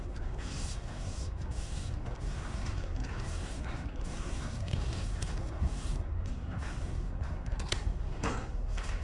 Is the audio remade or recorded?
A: remade